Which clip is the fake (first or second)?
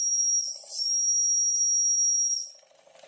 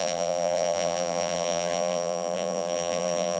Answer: second